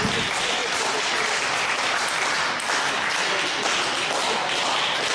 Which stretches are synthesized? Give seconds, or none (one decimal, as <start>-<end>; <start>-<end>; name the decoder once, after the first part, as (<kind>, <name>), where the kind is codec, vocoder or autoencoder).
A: 0.6-2.5 (vocoder, BigVGAN v2)